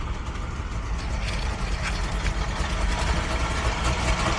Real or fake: real